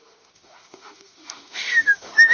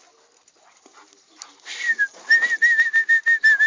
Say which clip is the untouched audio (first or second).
second